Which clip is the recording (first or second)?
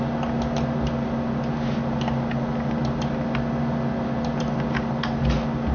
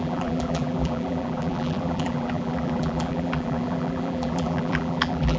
first